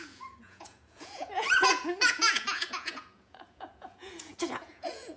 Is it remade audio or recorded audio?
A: remade